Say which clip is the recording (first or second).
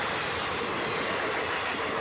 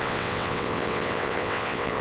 first